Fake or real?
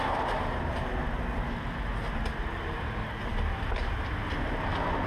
real